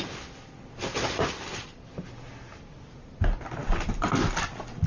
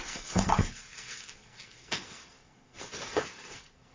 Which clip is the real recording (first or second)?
first